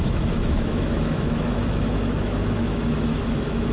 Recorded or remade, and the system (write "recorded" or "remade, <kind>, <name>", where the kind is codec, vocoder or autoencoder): remade, autoencoder, DAC-VAE